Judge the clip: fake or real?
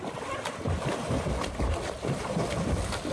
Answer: fake